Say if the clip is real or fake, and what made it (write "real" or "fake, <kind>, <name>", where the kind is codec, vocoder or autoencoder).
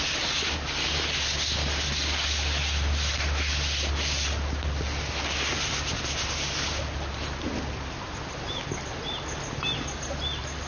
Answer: real